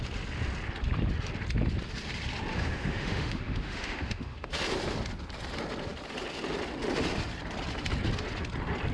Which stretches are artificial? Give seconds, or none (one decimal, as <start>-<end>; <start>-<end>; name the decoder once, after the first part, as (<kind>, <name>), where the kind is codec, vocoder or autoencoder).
2.5-4.5 (autoencoder, DAC-VAE)